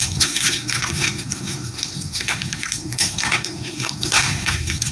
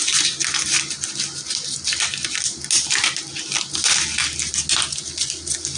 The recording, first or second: second